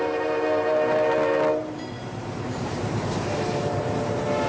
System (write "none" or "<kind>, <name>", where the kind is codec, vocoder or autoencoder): vocoder, BigVGAN v2